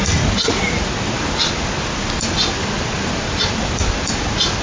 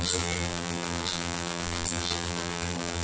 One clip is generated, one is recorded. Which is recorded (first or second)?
first